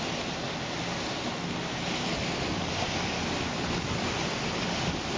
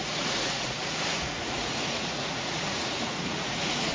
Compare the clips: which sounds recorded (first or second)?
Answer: first